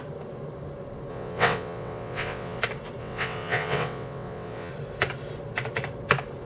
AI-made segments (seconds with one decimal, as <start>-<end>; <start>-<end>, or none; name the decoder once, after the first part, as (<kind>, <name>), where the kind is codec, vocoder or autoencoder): 1.1-2.6 (vocoder, WaveNeXt); 3.0-4.7